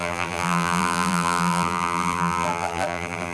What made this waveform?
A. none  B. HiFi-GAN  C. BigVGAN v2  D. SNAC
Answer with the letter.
C